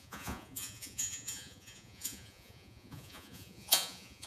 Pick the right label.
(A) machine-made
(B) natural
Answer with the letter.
A